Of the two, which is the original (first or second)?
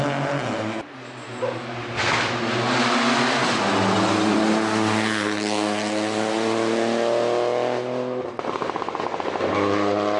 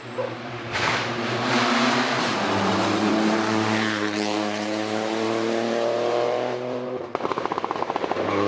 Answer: first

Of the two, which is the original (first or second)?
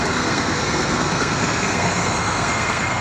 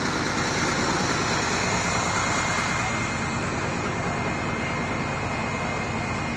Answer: second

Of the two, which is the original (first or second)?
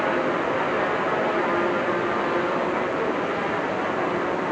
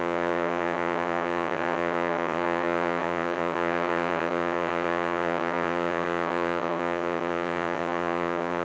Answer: first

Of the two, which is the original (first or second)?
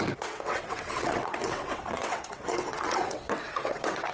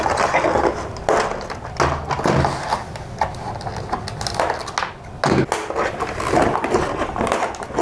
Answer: second